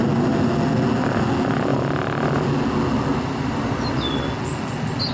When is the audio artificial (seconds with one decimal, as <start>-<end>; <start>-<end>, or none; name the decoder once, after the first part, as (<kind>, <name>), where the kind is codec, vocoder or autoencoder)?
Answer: 3.1-3.9 (vocoder, BigVGAN v2)